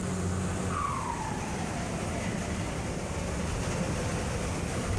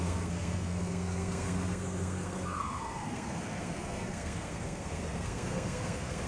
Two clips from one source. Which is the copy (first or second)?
second